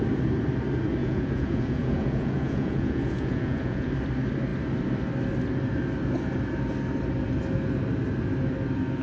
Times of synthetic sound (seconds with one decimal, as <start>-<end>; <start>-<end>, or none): 1.0-3.9